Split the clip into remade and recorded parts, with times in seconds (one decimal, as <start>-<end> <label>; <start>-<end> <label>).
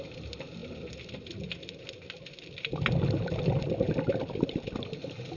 0.0-5.4 recorded